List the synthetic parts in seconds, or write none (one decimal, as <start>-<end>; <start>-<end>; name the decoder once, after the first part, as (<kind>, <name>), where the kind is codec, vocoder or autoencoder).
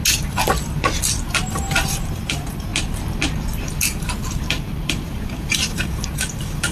1.5-2.7 (vocoder, BigVGAN v2); 3.6-6.7